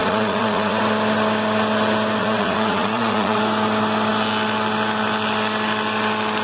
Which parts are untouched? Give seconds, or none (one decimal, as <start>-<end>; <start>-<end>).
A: 0.8-2.2; 3.4-6.4